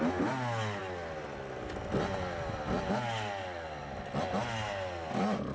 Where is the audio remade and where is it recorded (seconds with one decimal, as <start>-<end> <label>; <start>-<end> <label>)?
0.0-5.5 recorded